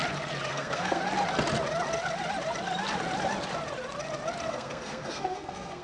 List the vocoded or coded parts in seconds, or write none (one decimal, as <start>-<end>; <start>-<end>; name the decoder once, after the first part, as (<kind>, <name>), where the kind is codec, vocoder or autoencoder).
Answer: 0.5-1.0 (codec, SNAC); 4.5-5.8

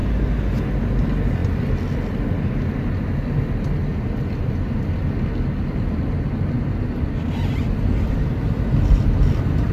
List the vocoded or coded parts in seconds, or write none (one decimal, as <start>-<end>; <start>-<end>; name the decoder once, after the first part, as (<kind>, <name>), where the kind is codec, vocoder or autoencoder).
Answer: none

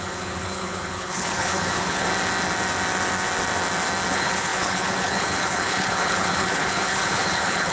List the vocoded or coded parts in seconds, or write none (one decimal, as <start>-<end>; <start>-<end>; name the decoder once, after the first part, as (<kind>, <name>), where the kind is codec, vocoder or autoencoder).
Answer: 0.0-2.1 (codec, HILCodec); 4.1-7.7

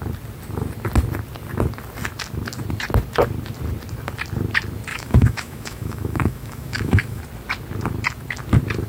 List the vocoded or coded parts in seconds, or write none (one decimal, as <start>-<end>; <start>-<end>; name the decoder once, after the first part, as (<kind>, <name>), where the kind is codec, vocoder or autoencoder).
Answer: 4.9-7.2 (autoencoder, DAC-VAE)

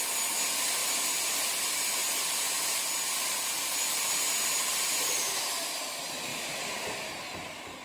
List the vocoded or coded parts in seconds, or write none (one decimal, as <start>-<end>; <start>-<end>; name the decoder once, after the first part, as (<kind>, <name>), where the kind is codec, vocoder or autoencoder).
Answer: 6.3-7.1 (vocoder, BigVGAN v2)